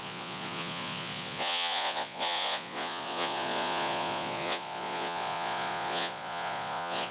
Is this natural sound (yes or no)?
no